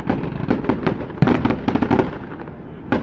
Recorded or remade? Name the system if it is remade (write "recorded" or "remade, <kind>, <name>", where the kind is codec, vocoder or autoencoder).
recorded